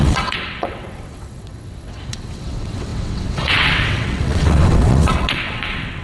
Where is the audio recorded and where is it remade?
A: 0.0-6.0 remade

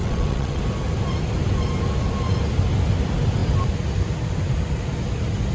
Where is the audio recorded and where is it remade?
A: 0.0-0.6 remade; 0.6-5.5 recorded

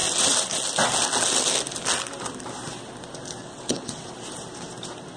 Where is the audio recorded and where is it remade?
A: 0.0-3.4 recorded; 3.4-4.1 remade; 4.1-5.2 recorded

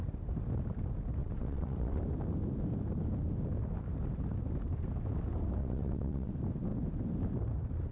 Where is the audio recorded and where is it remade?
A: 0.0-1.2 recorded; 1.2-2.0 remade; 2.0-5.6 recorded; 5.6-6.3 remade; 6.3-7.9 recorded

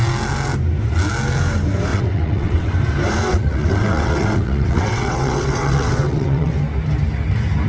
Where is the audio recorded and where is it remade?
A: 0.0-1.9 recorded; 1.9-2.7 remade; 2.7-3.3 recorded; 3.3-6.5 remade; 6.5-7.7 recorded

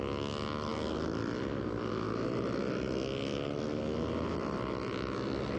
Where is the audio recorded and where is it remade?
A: 0.0-5.6 recorded